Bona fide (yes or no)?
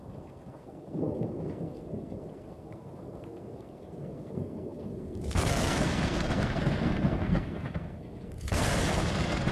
no